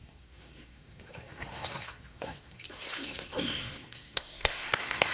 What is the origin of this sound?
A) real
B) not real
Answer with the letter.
B